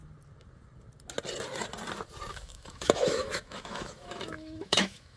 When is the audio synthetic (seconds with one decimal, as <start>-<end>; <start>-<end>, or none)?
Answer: 2.3-5.2